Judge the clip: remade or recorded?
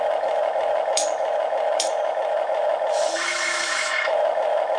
remade